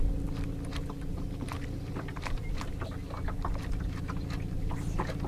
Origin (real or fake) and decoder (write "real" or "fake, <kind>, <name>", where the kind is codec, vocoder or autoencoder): real